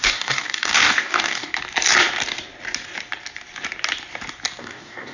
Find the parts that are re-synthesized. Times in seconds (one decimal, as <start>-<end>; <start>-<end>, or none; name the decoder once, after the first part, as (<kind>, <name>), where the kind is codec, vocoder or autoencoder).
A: 0.0-1.5 (codec, DAC); 4.6-5.1